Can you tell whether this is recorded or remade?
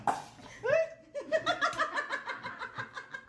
recorded